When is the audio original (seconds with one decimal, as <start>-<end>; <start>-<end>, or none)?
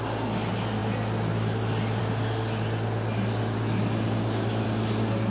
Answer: 0.0-5.3